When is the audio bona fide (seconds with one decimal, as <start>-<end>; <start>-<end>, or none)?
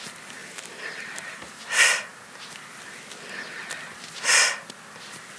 0.0-0.4; 1.6-5.4